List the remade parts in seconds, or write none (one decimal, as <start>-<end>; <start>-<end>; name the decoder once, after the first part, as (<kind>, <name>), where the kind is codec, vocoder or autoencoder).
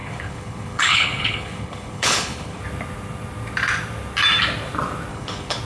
0.0-2.6 (codec, HILCodec); 5.1-5.6